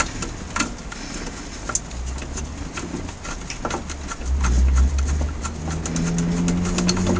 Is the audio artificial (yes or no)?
no